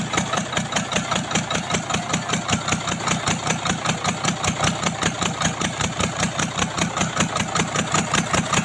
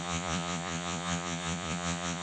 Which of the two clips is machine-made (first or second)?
second